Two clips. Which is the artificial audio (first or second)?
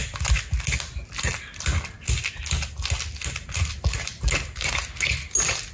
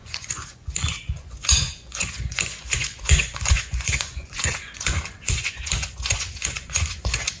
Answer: second